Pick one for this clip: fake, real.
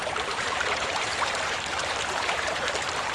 fake